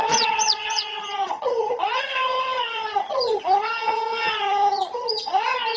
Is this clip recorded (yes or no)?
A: no